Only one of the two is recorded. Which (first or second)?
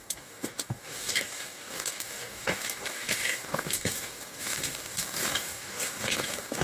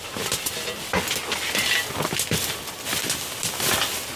second